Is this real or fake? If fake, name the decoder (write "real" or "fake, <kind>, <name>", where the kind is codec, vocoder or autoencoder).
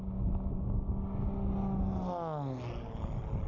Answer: real